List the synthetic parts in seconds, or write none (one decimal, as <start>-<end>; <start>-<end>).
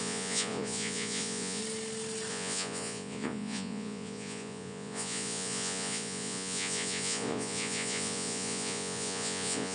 0.0-1.6; 2.3-9.7